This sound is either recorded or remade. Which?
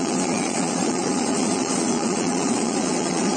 remade